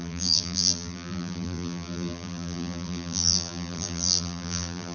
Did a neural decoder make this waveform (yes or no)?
yes